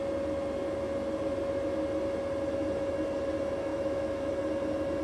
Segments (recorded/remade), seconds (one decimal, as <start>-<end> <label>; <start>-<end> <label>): 0.0-3.7 recorded; 3.7-4.3 remade; 4.3-5.0 recorded